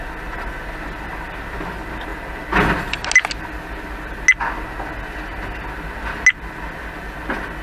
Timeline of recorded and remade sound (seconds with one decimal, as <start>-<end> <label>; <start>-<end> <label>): 0.0-7.6 recorded